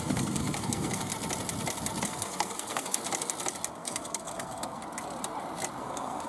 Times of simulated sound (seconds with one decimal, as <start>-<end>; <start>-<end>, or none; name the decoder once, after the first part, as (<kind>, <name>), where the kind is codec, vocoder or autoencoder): 0.0-1.1 (codec, SNAC); 2.0-3.0; 3.7-4.8; 5.8-6.3